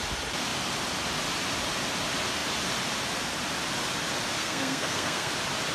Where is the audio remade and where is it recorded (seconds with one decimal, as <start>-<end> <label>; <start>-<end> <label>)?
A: 0.0-4.4 recorded; 4.4-5.3 remade; 5.3-5.7 recorded